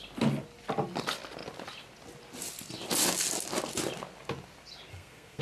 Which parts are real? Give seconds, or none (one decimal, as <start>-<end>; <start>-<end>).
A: 0.0-4.9